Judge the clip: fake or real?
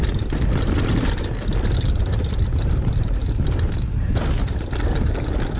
real